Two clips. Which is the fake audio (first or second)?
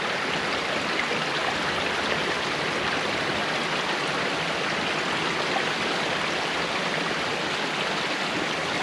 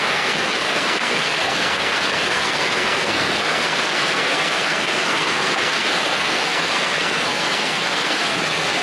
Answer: second